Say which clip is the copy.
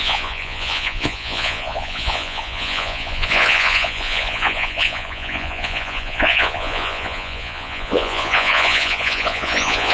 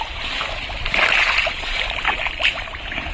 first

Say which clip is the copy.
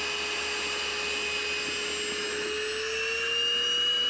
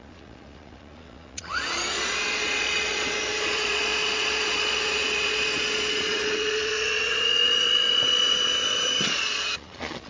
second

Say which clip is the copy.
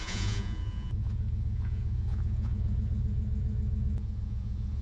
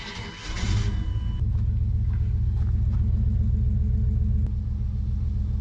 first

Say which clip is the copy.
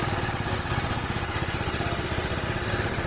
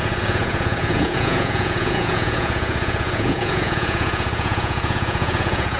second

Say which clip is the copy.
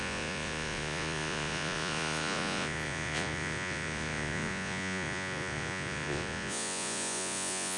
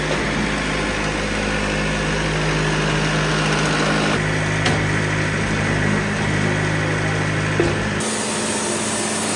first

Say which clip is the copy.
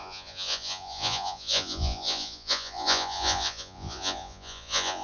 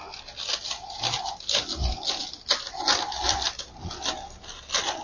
first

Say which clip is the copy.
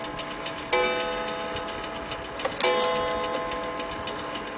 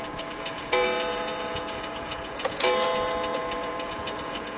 second